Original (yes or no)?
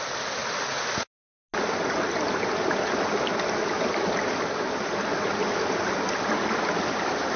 yes